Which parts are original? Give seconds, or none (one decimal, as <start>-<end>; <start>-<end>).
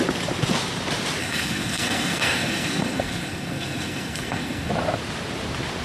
0.0-1.2; 4.7-5.8